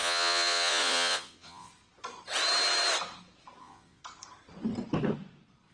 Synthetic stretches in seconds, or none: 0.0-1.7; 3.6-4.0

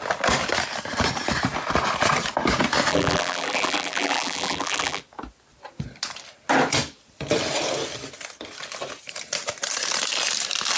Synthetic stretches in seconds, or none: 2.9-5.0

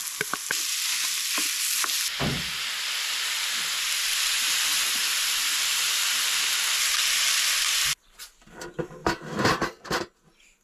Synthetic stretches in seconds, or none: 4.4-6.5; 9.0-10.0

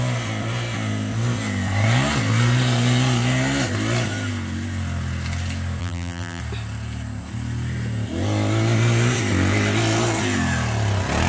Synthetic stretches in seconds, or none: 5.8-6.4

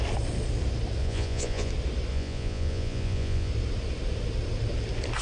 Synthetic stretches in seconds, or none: 1.0-1.7; 2.1-3.5